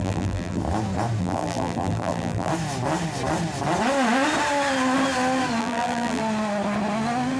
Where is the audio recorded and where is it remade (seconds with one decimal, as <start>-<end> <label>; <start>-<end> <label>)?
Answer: 0.0-0.6 remade; 0.6-1.2 recorded; 1.2-2.5 remade; 2.5-5.6 recorded; 5.6-6.2 remade; 6.2-7.4 recorded